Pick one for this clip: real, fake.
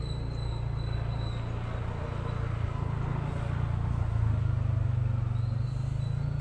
real